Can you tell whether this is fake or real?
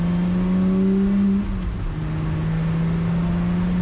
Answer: real